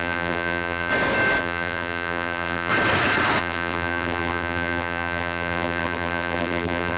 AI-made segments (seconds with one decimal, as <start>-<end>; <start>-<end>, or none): 0.0-0.9; 1.4-2.7; 3.4-7.0